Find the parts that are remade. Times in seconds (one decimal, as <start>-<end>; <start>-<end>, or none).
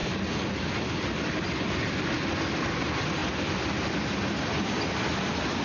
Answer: none